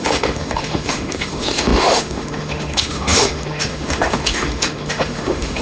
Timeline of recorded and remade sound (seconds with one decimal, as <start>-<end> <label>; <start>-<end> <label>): 0.0-5.6 remade